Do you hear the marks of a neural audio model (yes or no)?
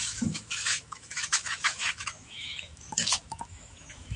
yes